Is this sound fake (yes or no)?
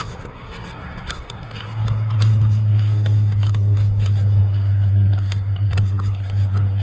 yes